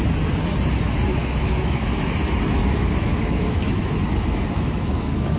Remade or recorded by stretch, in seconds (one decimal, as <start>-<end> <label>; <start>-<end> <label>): 0.0-1.1 recorded; 1.1-2.1 remade; 2.1-2.6 recorded; 2.6-5.4 remade